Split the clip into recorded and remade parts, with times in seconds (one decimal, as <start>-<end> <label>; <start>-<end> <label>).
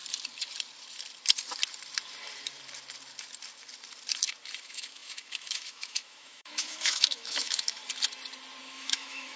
0.0-4.6 recorded; 4.6-7.8 remade; 7.8-8.6 recorded; 8.6-9.4 remade